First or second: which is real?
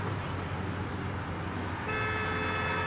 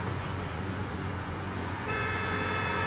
first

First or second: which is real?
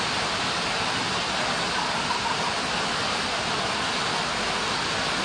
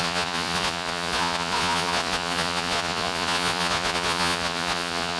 first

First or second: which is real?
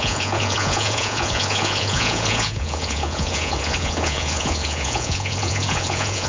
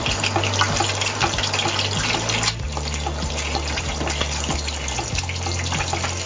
second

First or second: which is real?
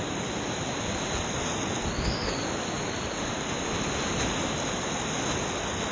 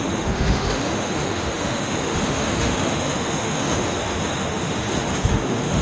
first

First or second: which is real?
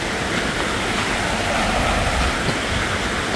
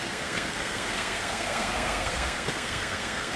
first